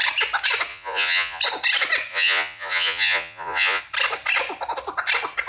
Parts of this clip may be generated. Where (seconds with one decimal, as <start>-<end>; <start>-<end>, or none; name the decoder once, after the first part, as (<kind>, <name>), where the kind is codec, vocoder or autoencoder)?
0.7-1.4 (vocoder, Vocos); 2.1-3.8